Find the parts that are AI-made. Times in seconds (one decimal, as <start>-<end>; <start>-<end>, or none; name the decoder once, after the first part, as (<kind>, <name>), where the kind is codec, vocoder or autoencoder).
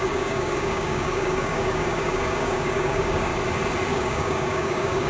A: 0.0-3.3 (codec, DAC); 3.9-5.1